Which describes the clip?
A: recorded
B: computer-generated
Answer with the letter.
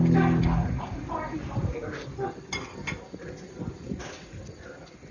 A